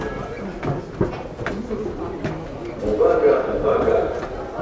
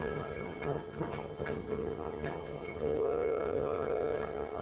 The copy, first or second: second